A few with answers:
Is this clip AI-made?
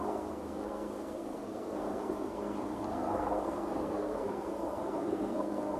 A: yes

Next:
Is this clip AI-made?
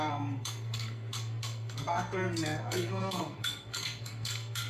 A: yes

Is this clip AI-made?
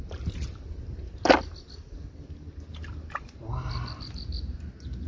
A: no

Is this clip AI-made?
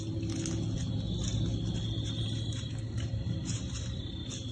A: no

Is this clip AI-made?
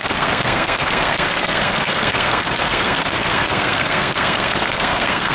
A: yes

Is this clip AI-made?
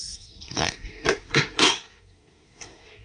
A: yes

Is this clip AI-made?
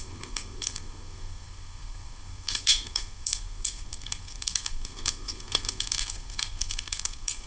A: yes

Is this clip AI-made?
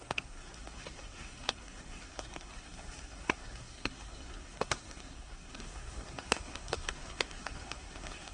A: yes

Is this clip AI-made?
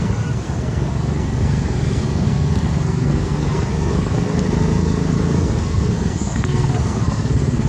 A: yes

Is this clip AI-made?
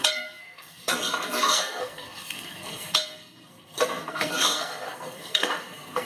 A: yes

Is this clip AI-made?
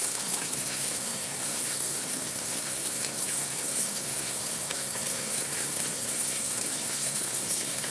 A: yes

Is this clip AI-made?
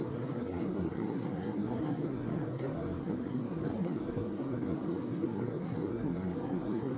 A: yes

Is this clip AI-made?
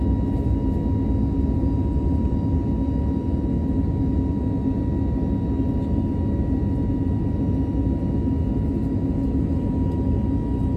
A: no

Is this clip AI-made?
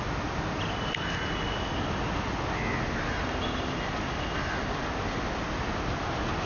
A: no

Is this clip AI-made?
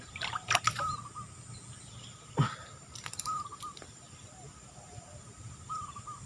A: no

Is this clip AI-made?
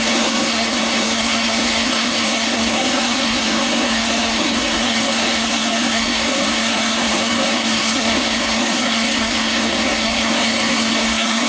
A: yes